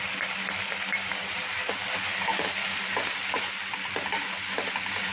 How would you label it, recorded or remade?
recorded